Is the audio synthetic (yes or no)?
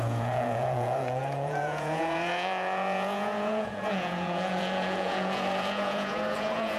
yes